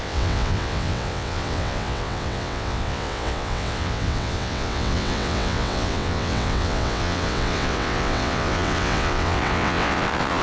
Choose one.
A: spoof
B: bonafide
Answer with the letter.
A